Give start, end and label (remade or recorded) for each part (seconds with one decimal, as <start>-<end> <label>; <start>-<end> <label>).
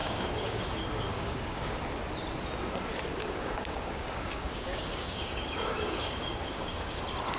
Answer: 0.0-0.6 remade; 0.6-1.1 recorded; 1.1-1.8 remade; 1.8-3.2 recorded; 3.2-7.0 remade; 7.0-7.4 recorded